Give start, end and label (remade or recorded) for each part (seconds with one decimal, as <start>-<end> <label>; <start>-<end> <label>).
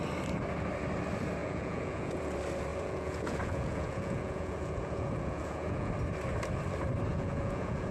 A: 0.0-1.4 recorded; 1.4-2.2 remade; 2.2-2.7 recorded; 2.7-5.9 remade; 5.9-7.1 recorded; 7.1-7.9 remade